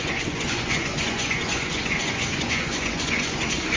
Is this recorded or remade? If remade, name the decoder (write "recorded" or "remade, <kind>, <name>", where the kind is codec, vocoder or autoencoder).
remade, vocoder, Vocos